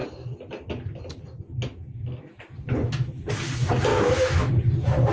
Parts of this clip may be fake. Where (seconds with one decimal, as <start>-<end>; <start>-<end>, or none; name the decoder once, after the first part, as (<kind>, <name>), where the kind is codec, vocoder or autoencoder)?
3.9-4.5 (autoencoder, DAC-VAE)